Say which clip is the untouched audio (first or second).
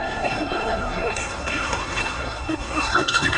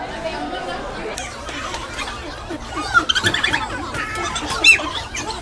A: second